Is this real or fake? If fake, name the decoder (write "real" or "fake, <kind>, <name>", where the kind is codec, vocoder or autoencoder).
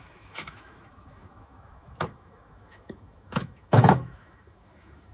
fake, autoencoder, DAC-VAE